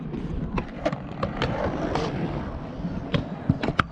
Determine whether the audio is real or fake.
real